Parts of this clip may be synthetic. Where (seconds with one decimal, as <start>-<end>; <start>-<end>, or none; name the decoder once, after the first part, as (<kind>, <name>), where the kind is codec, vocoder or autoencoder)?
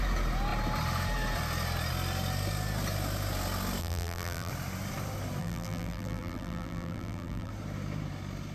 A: 3.8-4.5 (vocoder, BigVGAN v2); 5.4-7.5